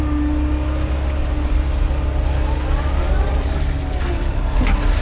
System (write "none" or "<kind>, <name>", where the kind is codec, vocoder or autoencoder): none